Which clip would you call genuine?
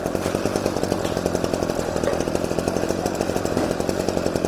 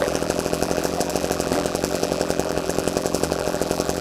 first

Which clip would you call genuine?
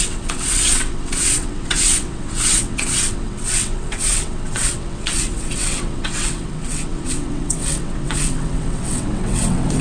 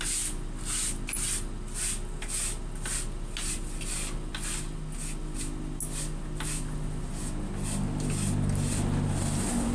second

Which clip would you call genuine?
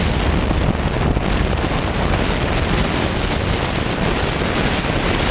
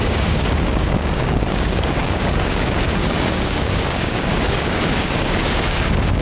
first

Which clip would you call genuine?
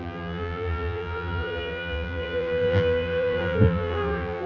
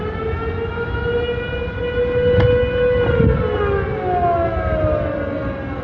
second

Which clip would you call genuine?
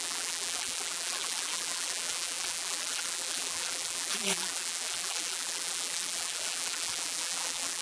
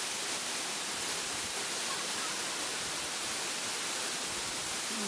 second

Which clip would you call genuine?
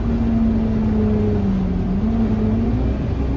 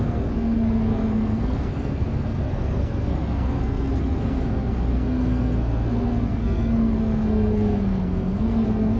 first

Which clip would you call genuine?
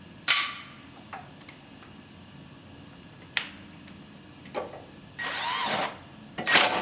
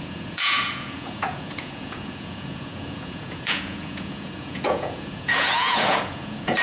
first